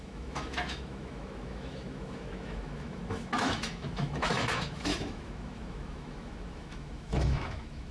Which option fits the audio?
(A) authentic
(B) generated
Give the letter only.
B